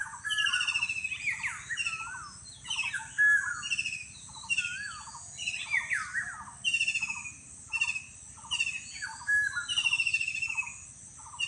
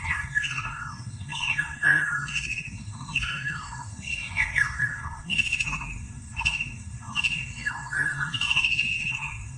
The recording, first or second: first